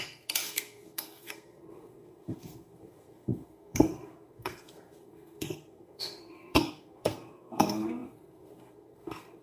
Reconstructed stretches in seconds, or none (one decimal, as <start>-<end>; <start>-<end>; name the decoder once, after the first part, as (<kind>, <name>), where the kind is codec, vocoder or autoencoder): 0.0-9.4 (codec, SNAC)